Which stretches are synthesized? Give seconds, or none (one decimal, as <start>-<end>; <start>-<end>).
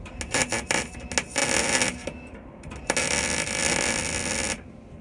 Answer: none